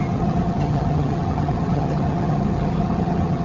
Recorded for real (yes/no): no